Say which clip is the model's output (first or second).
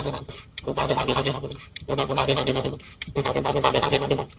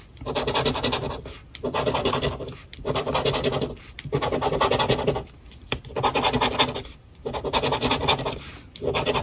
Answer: first